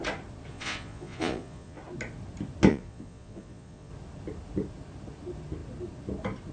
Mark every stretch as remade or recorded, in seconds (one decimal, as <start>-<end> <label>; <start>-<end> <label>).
0.0-0.5 recorded; 0.5-1.8 remade; 1.8-2.7 recorded; 2.7-3.9 remade; 3.9-6.5 recorded